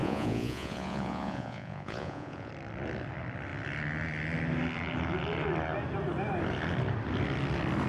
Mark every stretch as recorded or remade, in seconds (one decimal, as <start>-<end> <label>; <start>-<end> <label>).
0.0-2.5 remade; 2.5-7.9 recorded